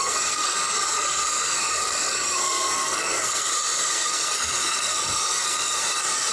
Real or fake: fake